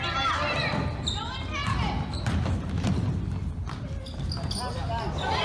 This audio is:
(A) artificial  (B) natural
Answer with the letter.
B